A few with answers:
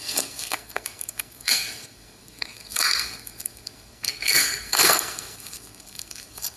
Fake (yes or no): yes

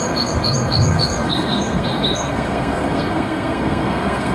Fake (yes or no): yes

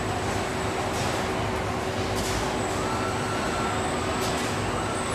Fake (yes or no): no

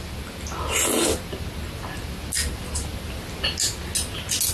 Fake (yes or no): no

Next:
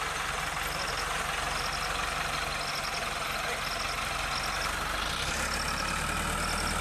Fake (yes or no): no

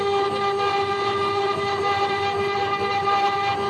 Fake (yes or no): no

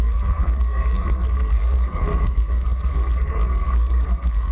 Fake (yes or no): yes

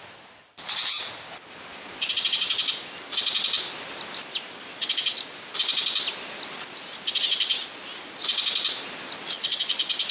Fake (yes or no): no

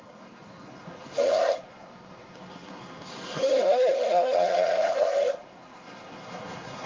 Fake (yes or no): yes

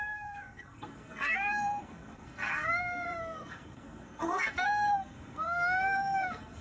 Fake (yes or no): yes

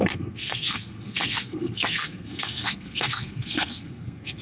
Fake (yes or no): yes